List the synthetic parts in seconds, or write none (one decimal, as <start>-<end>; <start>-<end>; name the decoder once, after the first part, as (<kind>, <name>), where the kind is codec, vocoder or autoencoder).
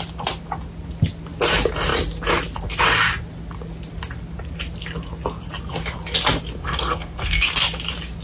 6.6-7.5 (codec, SNAC)